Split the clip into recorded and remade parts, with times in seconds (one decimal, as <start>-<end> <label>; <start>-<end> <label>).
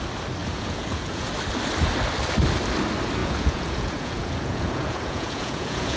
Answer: 0.0-0.4 recorded; 0.4-1.3 remade; 1.3-3.2 recorded; 3.2-6.0 remade